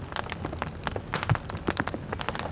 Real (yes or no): yes